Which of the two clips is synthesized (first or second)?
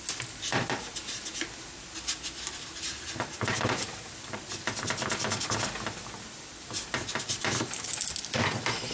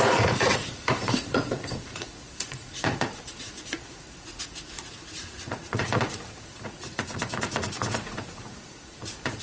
second